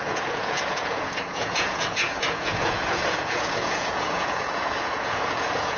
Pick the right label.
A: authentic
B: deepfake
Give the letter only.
B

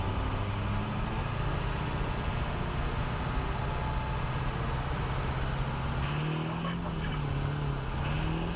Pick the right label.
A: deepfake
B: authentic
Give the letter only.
B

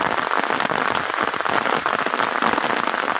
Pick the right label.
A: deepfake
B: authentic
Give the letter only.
B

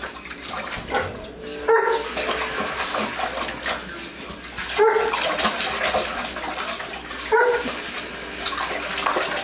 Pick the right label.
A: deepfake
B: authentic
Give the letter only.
B